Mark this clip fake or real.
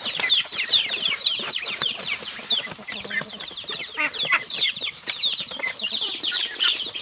fake